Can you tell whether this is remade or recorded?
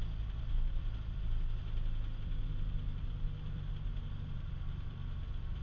remade